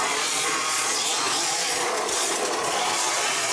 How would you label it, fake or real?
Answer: fake